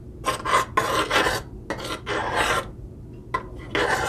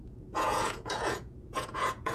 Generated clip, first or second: second